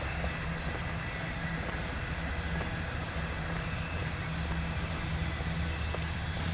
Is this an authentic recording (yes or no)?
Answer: yes